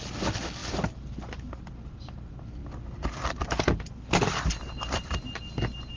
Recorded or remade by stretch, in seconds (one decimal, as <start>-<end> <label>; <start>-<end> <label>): 0.0-6.0 recorded